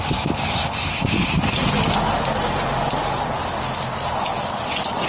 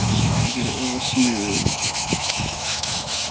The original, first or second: first